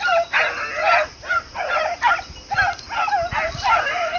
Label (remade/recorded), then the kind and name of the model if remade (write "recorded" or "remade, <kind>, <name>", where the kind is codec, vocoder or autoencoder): recorded